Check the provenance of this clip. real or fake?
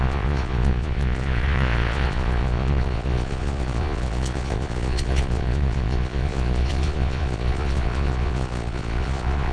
fake